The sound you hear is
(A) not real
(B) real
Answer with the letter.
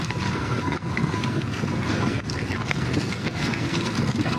A